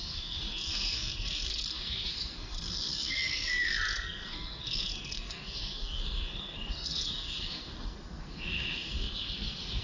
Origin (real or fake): fake